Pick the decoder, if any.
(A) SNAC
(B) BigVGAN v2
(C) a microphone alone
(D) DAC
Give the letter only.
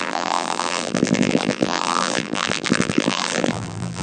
B